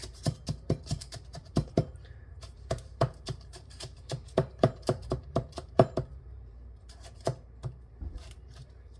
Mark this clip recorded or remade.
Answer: remade